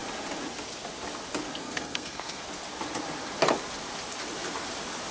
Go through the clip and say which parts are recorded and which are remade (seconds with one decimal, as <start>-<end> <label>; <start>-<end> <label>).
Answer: 0.0-1.6 recorded; 1.6-2.4 remade; 2.4-5.1 recorded